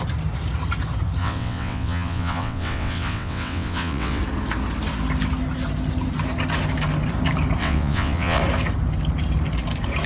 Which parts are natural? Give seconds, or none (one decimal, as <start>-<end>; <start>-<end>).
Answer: 0.0-1.2; 4.2-7.6; 8.4-10.1